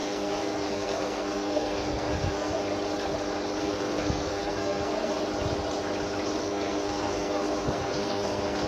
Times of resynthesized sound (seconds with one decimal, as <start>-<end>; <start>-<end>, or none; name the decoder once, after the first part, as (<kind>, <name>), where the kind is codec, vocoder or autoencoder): 0.0-2.6 (codec, SNAC); 3.6-5.1; 6.4-8.7